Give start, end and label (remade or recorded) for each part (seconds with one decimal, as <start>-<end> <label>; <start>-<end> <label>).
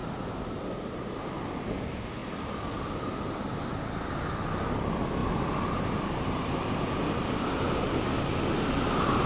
0.0-2.2 recorded; 2.2-3.1 remade; 3.1-5.2 recorded; 5.2-8.1 remade; 8.1-9.3 recorded